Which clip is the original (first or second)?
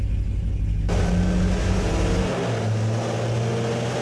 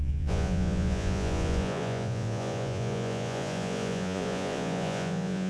first